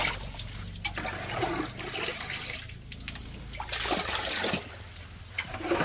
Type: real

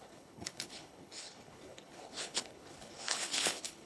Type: fake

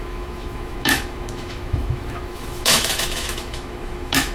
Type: fake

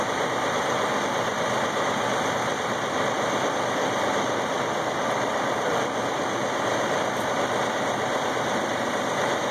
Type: real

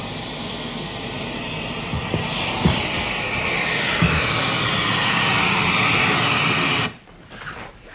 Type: real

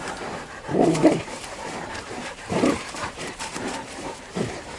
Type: fake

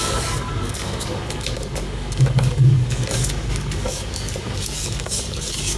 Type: fake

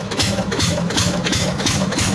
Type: fake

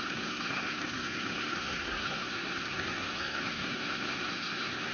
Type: fake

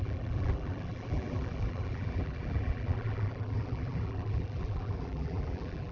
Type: fake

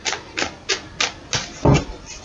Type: real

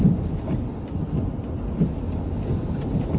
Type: real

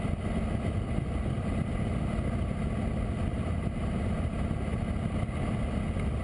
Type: real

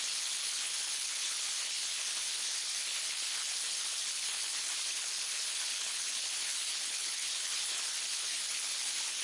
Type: fake